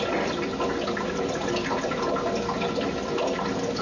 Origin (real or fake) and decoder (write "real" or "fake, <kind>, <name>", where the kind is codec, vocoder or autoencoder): real